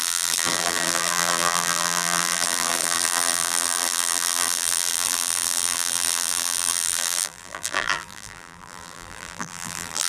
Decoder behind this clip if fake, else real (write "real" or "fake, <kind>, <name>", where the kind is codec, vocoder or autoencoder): fake, vocoder, BigVGAN v2